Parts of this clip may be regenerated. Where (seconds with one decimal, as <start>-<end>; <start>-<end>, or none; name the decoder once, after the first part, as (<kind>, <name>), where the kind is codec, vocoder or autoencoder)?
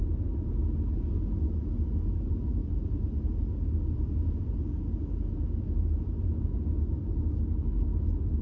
none